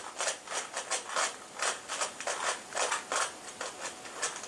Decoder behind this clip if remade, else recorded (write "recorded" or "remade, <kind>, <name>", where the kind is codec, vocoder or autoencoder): recorded